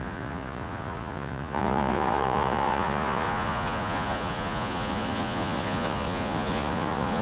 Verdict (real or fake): fake